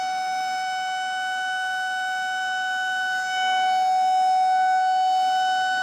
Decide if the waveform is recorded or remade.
recorded